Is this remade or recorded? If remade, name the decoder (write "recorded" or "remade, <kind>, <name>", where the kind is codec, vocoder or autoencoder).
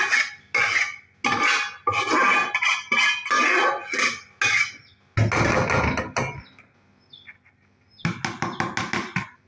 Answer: recorded